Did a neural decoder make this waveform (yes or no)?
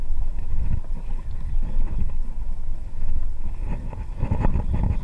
no